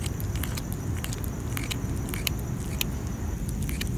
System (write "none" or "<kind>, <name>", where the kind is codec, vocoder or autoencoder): none